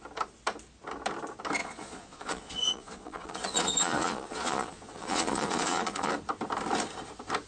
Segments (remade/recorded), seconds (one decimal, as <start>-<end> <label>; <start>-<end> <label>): 0.0-1.6 recorded; 1.6-6.1 remade; 6.1-7.5 recorded